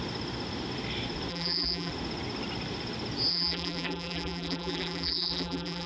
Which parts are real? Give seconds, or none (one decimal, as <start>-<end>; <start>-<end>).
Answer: 0.0-1.3; 1.9-3.3